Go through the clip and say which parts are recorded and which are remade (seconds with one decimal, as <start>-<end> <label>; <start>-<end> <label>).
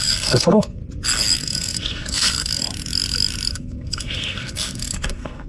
0.0-0.8 remade; 0.8-1.4 recorded; 1.4-2.6 remade; 2.6-3.5 recorded; 3.5-5.5 remade